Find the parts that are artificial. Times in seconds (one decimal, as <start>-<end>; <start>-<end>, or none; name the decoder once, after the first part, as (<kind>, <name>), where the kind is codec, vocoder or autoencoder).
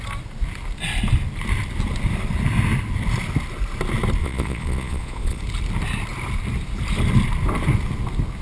4.2-5.4 (vocoder, Vocos)